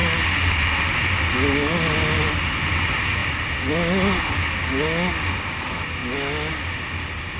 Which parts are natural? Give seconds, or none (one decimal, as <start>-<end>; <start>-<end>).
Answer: 0.0-7.4